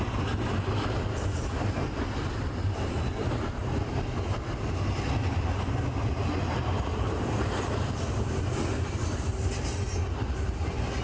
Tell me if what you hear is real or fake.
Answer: real